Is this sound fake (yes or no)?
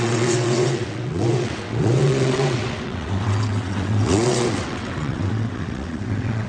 yes